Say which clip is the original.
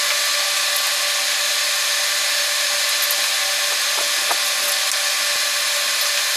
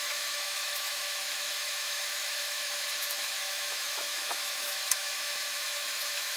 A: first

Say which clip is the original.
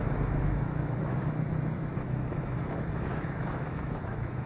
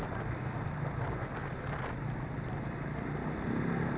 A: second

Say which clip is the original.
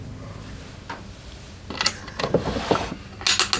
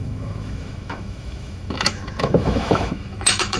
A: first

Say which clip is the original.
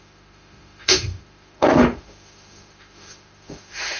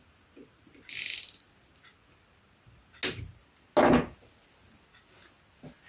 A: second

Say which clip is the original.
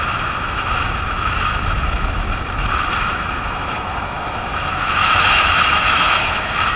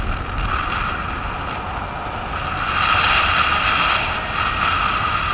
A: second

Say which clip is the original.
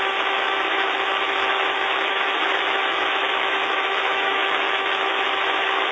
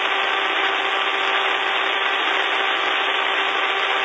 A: second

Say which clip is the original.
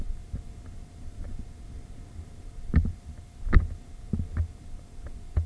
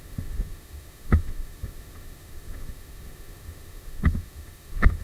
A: first